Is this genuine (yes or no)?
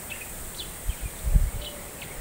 yes